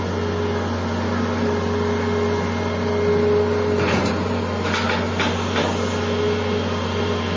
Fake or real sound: real